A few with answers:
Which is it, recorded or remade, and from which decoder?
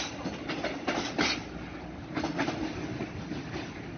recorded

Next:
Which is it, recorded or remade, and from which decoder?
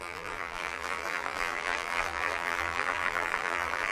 remade, vocoder, BigVGAN v2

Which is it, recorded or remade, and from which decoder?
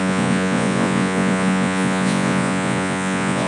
remade, vocoder, Vocos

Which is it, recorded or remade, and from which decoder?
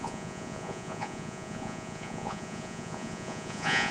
remade, vocoder, Vocos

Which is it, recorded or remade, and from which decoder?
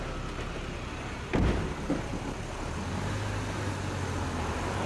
recorded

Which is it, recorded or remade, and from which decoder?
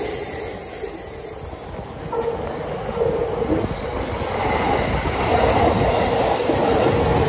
recorded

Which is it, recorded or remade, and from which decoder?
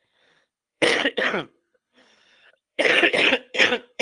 remade, codec, HILCodec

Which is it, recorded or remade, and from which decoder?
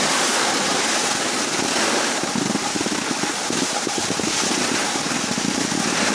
recorded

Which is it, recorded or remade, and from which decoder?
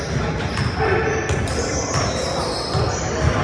recorded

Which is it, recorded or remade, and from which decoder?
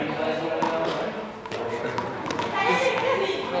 recorded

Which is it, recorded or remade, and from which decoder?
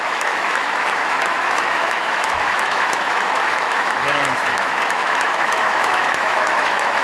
remade, autoencoder, DAC-VAE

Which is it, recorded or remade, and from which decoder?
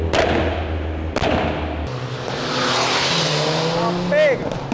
recorded